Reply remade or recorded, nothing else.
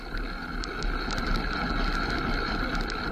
recorded